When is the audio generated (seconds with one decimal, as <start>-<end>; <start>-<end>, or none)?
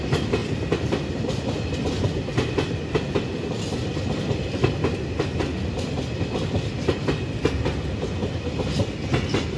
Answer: 0.4-1.9; 3.7-5.0; 5.5-7.0